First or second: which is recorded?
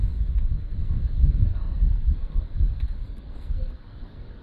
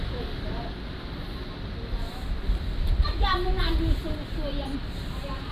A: second